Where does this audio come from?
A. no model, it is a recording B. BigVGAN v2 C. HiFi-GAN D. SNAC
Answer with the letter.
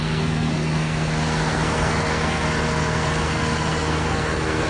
D